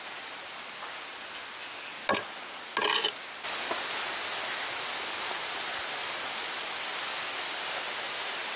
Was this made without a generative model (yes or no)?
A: yes